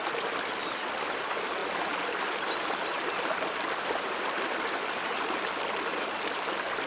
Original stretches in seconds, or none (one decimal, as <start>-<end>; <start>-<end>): 0.0-6.9